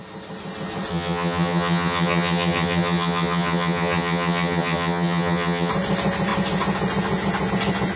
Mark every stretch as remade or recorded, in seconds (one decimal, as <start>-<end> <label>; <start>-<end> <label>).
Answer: 0.0-0.9 recorded; 0.9-5.7 remade; 5.7-8.0 recorded